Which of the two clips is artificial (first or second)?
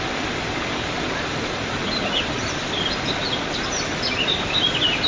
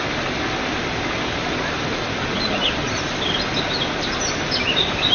first